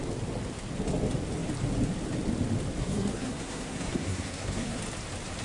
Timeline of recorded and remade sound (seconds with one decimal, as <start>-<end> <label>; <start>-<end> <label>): 0.0-2.8 recorded; 2.8-4.8 remade; 4.8-5.4 recorded